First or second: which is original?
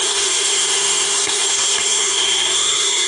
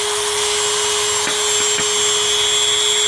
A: second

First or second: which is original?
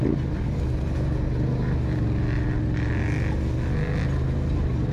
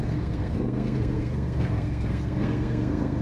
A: first